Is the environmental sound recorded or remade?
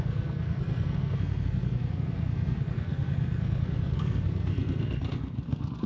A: remade